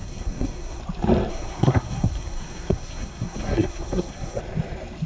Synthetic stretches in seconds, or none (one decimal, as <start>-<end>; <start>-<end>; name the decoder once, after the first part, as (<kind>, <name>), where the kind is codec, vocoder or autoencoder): 0.0-0.8 (codec, SNAC); 1.3-4.4